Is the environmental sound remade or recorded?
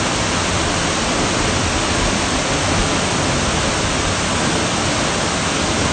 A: recorded